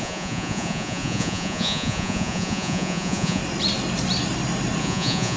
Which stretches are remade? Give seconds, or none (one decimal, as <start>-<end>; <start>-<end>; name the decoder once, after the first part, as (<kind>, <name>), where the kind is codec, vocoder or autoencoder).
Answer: 0.0-3.4 (vocoder, Vocos); 4.8-5.4

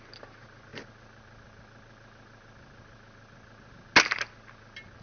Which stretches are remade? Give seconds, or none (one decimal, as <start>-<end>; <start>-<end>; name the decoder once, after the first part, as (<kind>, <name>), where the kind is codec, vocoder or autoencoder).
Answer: none

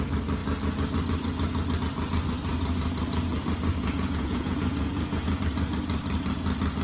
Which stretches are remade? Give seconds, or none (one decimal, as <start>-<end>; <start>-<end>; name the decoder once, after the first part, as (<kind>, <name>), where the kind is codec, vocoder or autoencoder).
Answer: 3.7-5.4 (vocoder, Vocos)

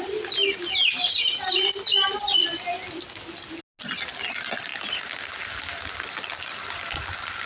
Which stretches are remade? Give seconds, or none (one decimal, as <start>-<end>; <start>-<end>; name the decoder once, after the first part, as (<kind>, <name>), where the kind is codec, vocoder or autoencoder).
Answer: none

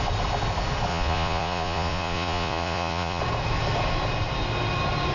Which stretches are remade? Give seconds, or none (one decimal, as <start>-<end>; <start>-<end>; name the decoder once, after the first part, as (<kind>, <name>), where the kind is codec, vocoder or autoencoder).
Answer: 0.9-3.2 (vocoder, Vocos)